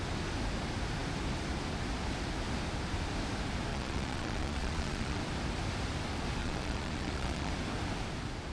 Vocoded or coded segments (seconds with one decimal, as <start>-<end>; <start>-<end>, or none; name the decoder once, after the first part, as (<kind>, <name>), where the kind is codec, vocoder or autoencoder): 3.7-5.2 (vocoder, Vocos); 6.4-7.5

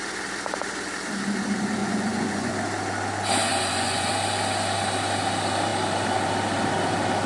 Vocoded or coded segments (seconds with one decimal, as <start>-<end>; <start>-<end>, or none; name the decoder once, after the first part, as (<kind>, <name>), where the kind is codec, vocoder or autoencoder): 1.8-2.5 (vocoder, Vocos); 3.5-4.1

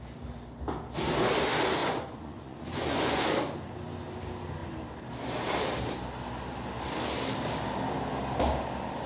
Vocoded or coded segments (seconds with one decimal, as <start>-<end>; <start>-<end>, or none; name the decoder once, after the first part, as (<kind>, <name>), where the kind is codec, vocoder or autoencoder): 1.8-3.2 (vocoder, Vocos)

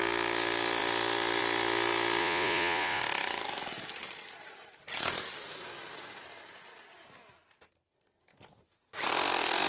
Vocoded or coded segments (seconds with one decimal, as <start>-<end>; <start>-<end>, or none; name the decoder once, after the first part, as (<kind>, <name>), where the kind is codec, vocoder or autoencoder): 2.2-3.0 (vocoder, Vocos)

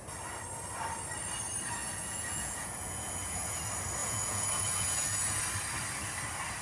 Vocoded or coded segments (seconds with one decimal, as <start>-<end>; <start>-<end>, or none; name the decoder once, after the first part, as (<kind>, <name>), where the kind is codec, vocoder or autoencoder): 1.8-3.6 (vocoder, Vocos); 4.0-5.4

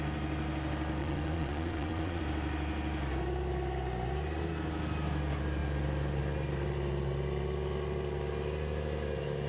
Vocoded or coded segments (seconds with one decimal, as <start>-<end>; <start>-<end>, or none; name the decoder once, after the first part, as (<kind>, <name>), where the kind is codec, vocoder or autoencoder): 1.0-2.2 (vocoder, Vocos)

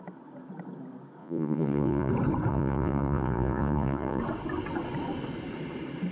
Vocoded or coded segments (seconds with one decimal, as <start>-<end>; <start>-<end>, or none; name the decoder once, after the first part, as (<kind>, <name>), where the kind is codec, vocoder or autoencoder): 1.2-2.1 (vocoder, Vocos); 2.5-4.2

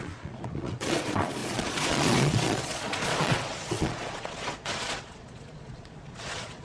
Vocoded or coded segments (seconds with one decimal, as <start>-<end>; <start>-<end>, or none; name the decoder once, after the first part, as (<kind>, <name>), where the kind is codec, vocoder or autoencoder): 0.0-6.6 (vocoder, Vocos)